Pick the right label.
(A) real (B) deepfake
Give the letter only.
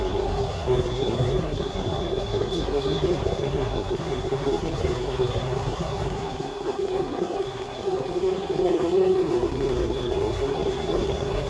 B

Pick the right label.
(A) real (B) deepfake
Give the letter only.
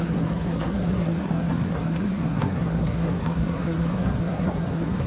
B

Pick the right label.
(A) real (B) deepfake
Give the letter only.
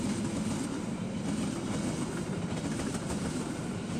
A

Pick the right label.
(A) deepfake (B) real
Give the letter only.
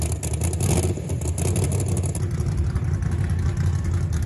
B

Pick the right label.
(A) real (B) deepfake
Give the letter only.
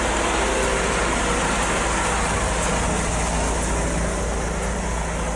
A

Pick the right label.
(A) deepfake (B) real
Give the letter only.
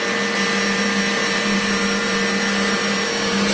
B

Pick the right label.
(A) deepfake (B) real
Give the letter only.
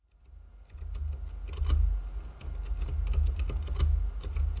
B